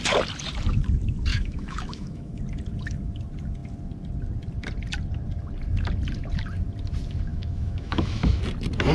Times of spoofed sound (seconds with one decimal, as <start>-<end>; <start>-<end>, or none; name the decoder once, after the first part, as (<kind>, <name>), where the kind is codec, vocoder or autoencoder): 1.3-2.4 (autoencoder, DAC-VAE); 7.3-8.4